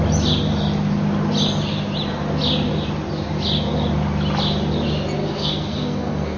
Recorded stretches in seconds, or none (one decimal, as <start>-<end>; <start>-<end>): 0.0-5.2